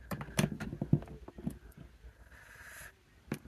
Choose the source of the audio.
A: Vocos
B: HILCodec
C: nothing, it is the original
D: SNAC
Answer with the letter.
C